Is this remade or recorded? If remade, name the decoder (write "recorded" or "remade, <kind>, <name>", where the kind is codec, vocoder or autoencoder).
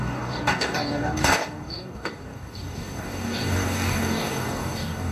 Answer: remade, codec, DAC